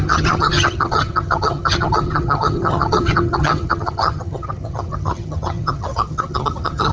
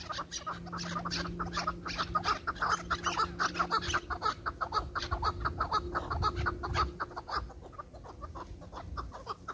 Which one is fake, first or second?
first